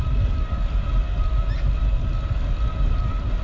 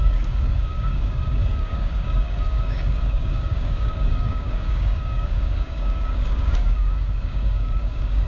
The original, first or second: first